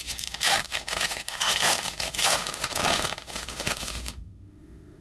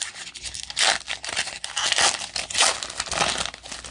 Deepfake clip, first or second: first